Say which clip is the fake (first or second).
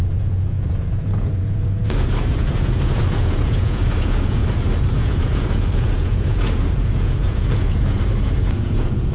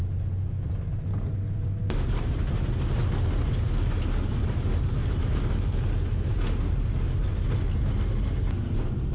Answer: first